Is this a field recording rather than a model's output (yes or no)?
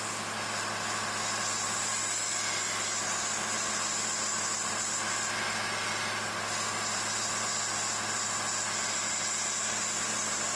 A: yes